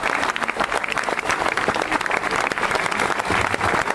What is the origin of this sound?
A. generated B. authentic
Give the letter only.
B